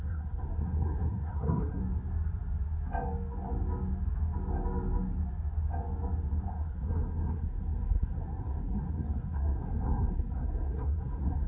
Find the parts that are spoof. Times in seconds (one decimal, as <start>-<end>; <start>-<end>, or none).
0.0-1.8; 6.5-11.5